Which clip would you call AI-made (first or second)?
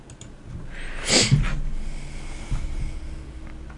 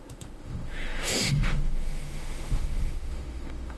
second